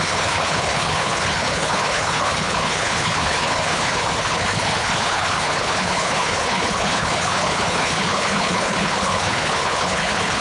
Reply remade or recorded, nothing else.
remade